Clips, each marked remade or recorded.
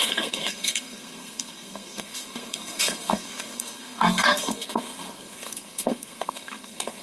remade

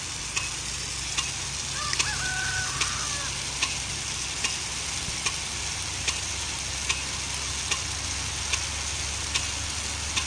recorded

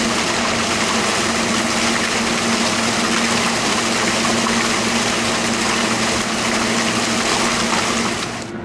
recorded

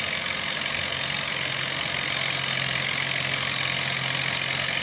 recorded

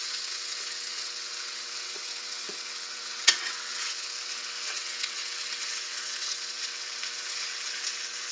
remade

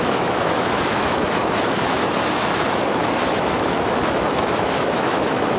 remade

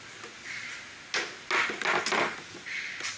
recorded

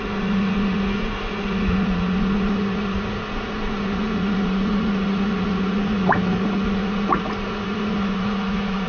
remade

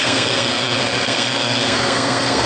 remade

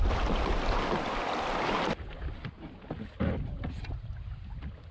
recorded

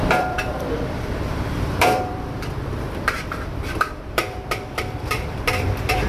remade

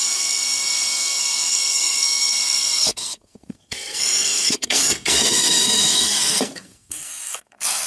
remade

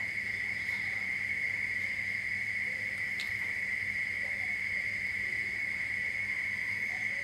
remade